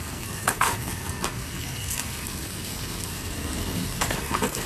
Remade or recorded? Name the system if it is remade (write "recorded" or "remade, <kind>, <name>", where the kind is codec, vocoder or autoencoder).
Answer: remade, codec, SNAC